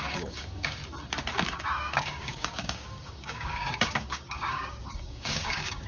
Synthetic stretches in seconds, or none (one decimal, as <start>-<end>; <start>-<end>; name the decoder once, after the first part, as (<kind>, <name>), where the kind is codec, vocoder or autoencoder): 0.0-0.8 (codec, DAC); 1.3-5.9